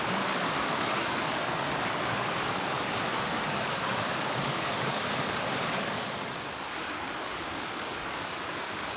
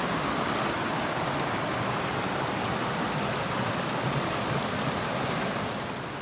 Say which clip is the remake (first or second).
first